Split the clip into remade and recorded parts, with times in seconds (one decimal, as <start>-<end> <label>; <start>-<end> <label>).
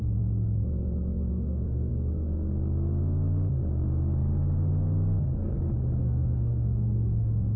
0.0-1.3 recorded; 1.3-1.9 remade; 1.9-6.0 recorded; 6.0-7.6 remade